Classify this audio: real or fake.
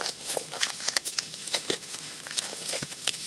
fake